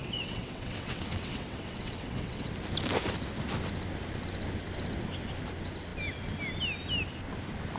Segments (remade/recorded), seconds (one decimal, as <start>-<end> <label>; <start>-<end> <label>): 0.0-2.5 remade; 2.5-7.8 recorded